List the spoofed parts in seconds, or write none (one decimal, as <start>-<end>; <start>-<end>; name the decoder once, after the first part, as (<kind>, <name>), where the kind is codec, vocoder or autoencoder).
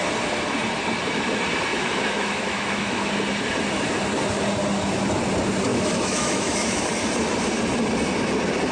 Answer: 1.7-3.1 (autoencoder, DAC-VAE); 5.7-6.9